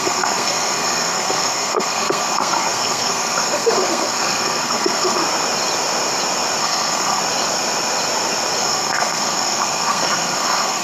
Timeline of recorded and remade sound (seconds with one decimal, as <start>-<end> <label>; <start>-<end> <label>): 0.0-5.2 remade; 5.2-6.6 recorded; 6.6-7.2 remade; 7.2-8.6 recorded; 8.6-10.8 remade